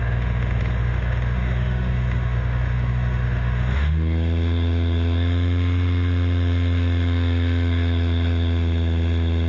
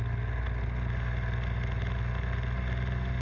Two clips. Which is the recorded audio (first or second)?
second